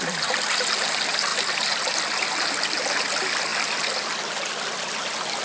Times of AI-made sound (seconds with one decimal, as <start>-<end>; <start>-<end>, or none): none